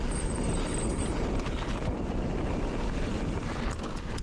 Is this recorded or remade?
recorded